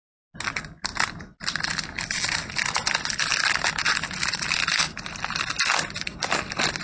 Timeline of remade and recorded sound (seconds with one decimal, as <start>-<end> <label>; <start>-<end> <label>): 0.0-6.8 recorded